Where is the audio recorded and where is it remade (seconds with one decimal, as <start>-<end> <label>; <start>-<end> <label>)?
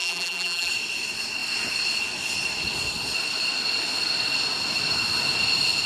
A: 0.0-0.7 remade; 0.7-5.9 recorded